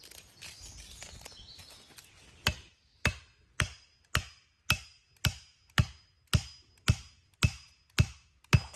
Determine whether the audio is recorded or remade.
recorded